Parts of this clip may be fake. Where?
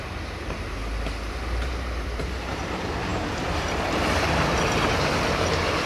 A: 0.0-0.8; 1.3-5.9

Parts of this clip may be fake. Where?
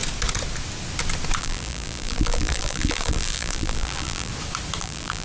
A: 1.4-4.3; 4.8-5.2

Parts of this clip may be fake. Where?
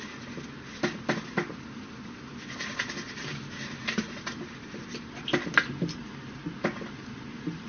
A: 3.3-4.0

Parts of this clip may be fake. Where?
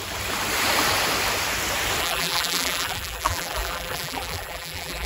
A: 2.0-5.1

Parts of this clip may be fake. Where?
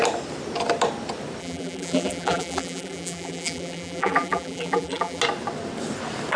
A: 1.4-5.2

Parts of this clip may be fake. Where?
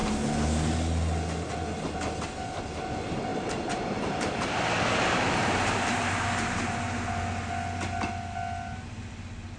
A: 3.3-6.7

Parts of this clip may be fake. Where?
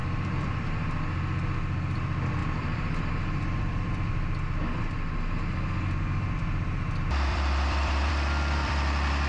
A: 0.0-0.7; 2.4-4.1; 7.3-8.1; 8.6-9.3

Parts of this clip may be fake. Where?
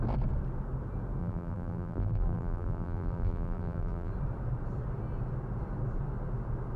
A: 1.2-4.1